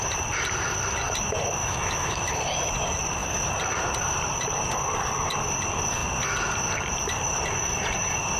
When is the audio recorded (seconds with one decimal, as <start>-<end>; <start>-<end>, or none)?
0.0-1.6; 2.3-8.4